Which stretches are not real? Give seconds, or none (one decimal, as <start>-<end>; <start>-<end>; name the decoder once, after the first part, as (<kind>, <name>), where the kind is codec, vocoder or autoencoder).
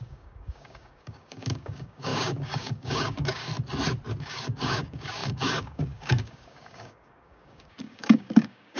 0.0-3.5 (codec, DAC); 4.2-8.8